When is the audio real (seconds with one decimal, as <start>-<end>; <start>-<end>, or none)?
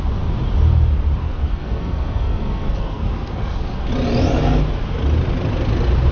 0.0-1.2; 3.9-6.1